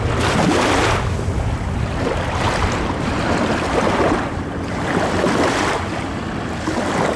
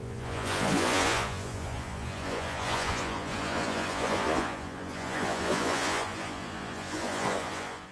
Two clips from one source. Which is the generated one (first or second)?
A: second